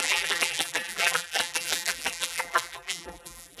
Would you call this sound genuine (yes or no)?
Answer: no